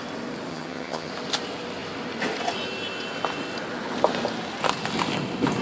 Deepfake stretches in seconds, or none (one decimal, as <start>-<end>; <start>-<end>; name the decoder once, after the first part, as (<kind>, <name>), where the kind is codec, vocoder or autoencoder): 0.5-1.1 (vocoder, HiFi-GAN)